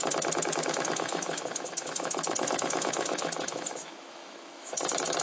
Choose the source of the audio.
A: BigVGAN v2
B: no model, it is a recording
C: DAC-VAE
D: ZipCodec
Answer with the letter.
C